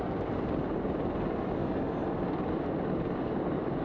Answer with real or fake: real